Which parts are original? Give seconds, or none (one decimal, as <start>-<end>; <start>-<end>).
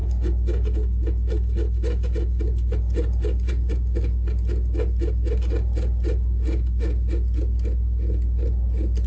0.0-9.1